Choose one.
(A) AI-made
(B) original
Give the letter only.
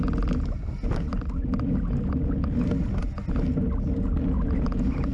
B